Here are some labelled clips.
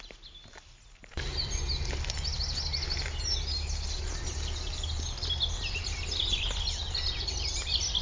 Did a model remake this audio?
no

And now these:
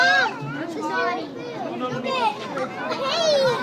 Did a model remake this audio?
no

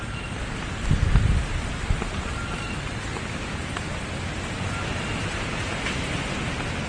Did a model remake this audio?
no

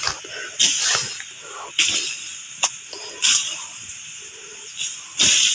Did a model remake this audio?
no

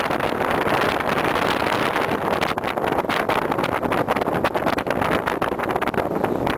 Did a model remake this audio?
no